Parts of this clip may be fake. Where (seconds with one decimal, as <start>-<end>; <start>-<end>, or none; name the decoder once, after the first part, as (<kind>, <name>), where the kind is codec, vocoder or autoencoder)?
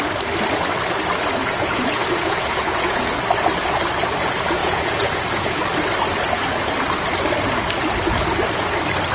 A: 1.4-3.1 (vocoder, Vocos); 4.6-5.6